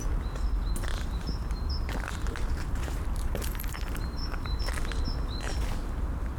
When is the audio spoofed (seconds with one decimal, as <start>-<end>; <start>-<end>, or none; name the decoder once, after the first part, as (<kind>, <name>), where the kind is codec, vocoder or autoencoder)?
0.9-4.6 (vocoder, BigVGAN v2)